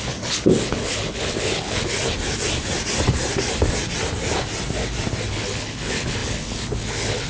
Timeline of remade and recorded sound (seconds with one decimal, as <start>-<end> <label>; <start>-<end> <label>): 0.0-2.0 remade; 2.0-5.3 recorded; 5.3-7.3 remade